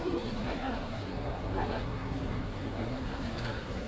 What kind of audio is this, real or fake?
fake